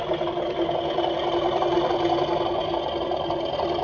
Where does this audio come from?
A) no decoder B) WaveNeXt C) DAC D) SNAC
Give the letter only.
A